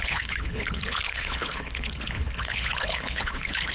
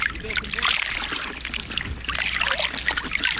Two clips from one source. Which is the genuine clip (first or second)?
second